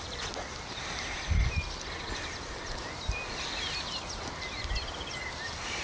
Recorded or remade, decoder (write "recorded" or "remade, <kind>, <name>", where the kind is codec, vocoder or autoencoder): recorded